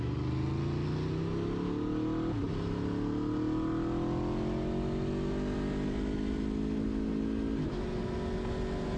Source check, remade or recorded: recorded